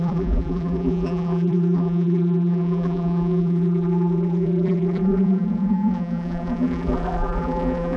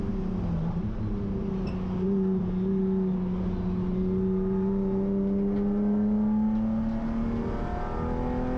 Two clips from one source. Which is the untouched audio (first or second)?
second